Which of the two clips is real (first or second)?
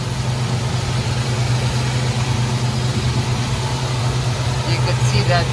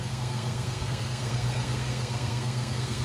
first